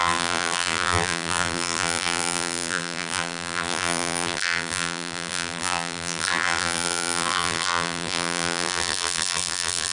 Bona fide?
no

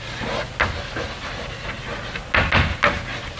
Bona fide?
yes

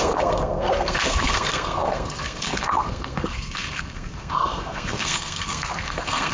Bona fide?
no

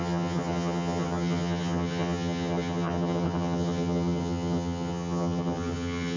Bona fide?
no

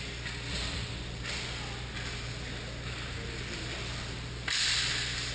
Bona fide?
yes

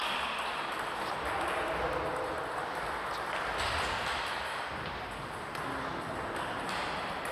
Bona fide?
yes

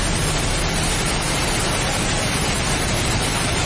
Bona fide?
no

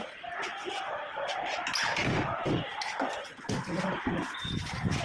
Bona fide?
yes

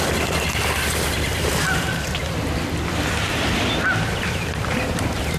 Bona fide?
no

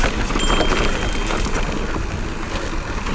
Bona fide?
yes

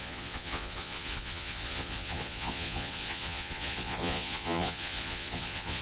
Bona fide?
no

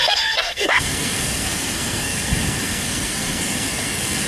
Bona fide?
no